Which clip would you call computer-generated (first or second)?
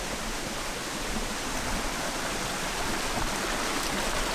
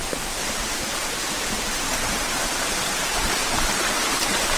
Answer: second